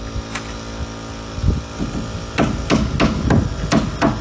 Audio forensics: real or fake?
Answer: real